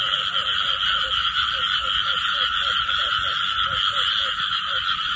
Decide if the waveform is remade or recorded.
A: recorded